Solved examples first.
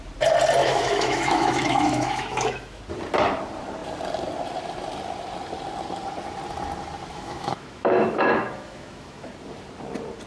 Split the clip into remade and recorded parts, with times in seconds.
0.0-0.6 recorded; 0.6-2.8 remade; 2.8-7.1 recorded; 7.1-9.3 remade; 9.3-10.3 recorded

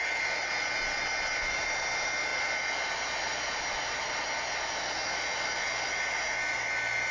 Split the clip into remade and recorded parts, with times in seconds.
0.0-7.1 recorded